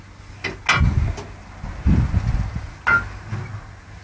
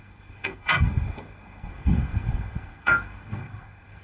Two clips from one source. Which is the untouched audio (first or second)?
first